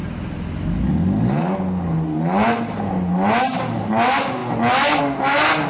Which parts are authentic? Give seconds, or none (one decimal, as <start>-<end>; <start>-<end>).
0.0-5.7